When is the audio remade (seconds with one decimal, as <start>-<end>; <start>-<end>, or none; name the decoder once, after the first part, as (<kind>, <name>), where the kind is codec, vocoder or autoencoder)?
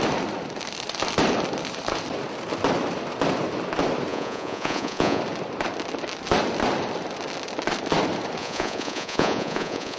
4.1-5.2 (vocoder, Vocos); 8.4-10.0